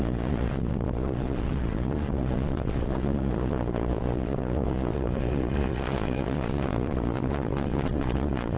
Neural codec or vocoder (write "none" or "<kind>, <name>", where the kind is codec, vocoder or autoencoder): vocoder, Vocos